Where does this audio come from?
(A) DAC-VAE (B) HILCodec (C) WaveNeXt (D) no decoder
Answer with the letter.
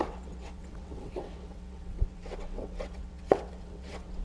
C